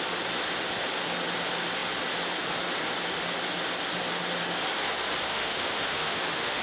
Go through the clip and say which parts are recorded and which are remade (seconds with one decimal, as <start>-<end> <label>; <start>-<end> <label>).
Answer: 0.0-5.3 recorded; 5.3-6.6 remade